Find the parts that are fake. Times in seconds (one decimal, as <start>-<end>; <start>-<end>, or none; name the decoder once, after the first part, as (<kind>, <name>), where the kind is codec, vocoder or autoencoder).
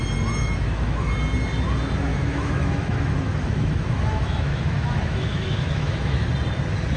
0.4-1.1 (autoencoder, DAC-VAE); 2.1-6.3